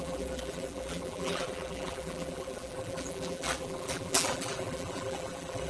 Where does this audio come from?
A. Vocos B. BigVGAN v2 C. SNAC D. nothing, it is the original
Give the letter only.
B